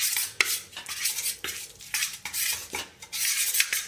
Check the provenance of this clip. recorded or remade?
recorded